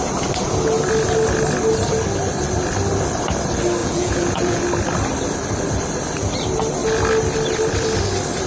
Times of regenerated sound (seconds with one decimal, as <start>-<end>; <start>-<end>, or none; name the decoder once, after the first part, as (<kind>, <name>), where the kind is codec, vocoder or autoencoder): 3.8-4.6 (vocoder, Vocos)